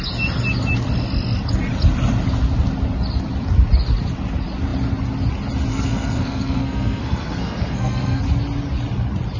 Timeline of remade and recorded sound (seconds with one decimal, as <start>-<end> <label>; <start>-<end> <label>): 0.0-5.7 recorded; 5.7-8.2 remade; 8.2-9.4 recorded